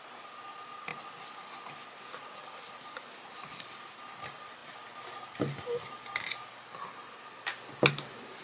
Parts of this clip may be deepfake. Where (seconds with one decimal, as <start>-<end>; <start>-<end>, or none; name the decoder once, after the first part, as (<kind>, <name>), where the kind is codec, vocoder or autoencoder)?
none